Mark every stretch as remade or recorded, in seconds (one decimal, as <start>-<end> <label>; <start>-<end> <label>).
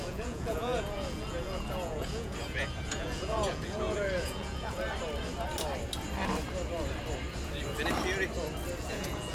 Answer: 0.0-4.8 remade; 4.8-8.8 recorded; 8.8-9.3 remade